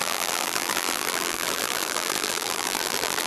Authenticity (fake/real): fake